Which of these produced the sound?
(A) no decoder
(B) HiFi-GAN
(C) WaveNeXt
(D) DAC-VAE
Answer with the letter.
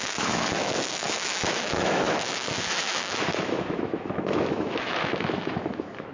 D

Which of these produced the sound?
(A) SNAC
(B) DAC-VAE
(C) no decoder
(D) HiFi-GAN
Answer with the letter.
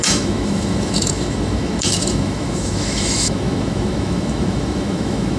B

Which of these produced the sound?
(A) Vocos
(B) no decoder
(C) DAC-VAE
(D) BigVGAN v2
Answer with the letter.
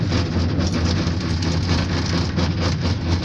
B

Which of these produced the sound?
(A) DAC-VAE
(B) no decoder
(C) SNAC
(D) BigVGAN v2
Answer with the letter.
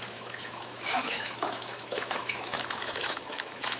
A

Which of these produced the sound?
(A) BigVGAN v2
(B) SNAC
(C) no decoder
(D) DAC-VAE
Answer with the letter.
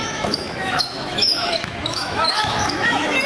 D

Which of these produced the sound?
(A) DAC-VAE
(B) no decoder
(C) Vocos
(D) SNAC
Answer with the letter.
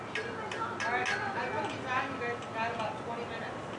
B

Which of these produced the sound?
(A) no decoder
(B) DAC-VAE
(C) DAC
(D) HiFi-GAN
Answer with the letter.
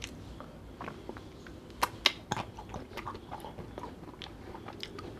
A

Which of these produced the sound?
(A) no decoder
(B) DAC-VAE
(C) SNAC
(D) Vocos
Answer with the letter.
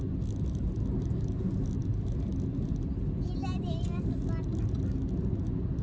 A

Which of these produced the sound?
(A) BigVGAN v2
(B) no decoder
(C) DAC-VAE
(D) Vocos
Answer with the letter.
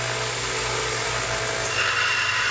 B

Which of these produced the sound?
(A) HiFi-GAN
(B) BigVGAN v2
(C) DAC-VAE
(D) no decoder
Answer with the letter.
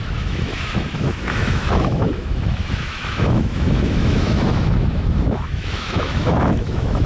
C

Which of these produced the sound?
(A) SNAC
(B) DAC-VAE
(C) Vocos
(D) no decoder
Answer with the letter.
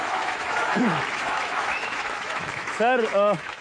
B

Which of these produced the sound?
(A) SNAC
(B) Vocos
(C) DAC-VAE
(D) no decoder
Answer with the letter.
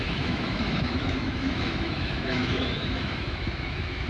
C